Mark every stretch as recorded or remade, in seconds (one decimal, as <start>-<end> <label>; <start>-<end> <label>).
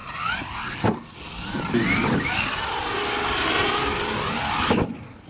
0.0-5.3 recorded